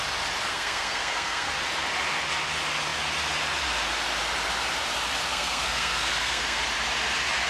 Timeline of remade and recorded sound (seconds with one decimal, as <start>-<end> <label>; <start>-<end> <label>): 0.0-0.5 recorded; 0.5-1.5 remade; 1.5-5.3 recorded; 5.3-6.6 remade; 6.6-7.5 recorded